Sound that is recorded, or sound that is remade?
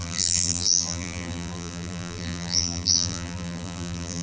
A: remade